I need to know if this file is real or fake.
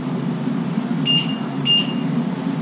real